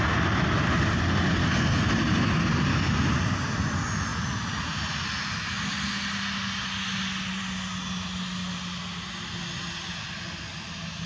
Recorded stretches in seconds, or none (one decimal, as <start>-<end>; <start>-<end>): 0.0-1.4; 1.9-11.1

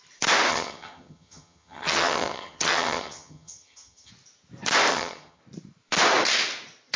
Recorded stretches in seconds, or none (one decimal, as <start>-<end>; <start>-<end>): 0.0-0.5; 4.1-4.9; 5.4-7.0